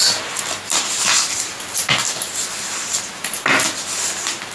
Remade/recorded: recorded